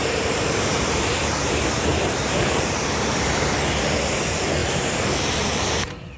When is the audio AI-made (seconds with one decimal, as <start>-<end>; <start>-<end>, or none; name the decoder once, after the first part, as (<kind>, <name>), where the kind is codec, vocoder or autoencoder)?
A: 0.0-1.1 (vocoder, BigVGAN v2); 1.9-3.3; 4.6-5.6